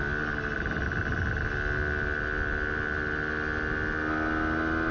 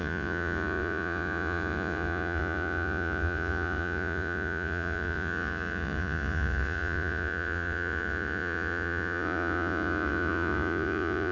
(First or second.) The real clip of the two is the first